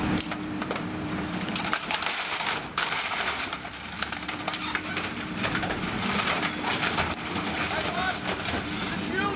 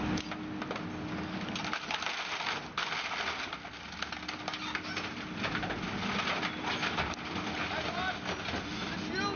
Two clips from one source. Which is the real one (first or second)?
second